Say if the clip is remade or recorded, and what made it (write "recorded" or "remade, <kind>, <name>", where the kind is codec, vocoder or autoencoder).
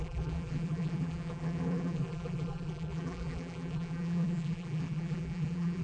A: remade, vocoder, BigVGAN v2